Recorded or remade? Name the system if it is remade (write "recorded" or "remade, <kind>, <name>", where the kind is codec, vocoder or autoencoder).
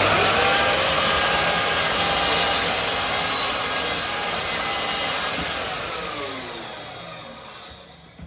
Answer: recorded